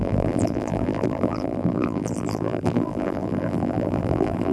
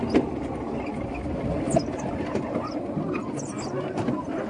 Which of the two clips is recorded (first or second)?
second